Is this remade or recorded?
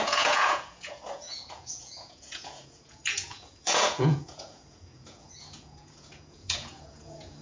remade